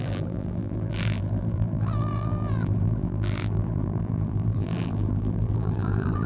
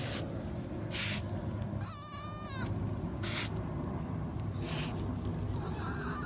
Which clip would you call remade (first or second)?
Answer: first